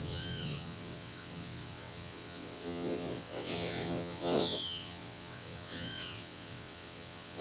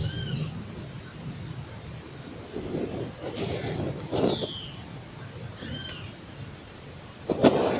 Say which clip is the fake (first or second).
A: first